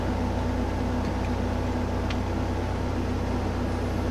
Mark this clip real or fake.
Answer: real